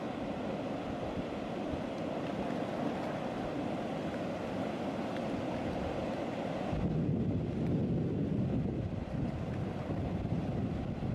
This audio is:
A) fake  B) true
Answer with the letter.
B